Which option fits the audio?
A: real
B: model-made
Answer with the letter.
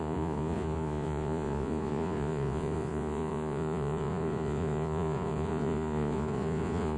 B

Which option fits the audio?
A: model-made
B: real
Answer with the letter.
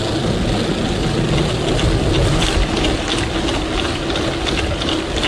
B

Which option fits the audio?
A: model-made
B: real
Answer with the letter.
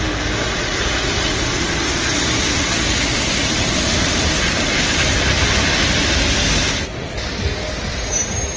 B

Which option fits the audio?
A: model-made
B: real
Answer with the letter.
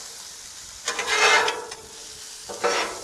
B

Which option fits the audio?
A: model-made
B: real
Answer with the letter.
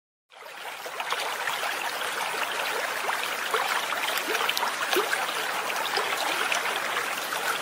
B